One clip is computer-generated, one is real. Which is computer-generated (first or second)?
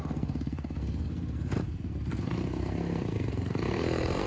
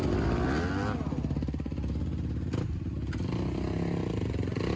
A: first